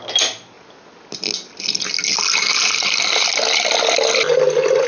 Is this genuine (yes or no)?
yes